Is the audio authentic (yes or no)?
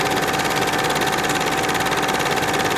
yes